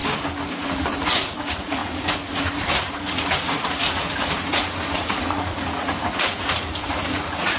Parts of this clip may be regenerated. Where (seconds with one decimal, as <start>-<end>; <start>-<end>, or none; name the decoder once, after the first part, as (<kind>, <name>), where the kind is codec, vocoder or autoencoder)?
0.5-7.6 (vocoder, Vocos)